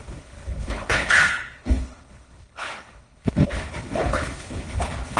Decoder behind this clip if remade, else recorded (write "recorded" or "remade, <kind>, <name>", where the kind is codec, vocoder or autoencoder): remade, codec, HILCodec